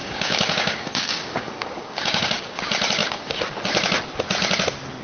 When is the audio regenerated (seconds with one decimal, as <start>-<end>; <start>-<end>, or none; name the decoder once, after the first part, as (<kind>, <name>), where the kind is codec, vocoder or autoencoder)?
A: 0.0-2.6 (codec, DAC); 3.0-3.7